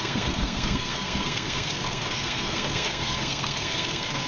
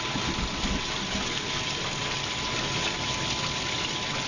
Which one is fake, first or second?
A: first